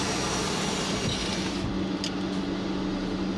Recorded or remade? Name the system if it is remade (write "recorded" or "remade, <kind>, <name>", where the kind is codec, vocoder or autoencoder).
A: recorded